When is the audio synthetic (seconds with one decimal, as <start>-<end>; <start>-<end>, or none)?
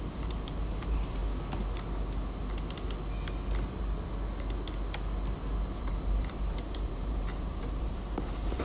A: 0.0-1.2; 5.6-8.6